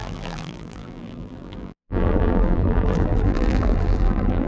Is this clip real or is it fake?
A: fake